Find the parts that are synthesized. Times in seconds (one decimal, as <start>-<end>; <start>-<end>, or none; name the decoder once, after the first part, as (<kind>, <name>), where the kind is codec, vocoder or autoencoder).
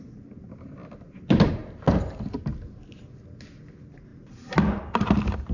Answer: 1.6-2.4 (vocoder, BigVGAN v2)